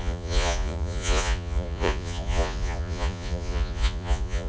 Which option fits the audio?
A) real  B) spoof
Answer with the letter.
B